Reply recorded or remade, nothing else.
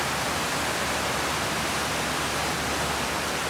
recorded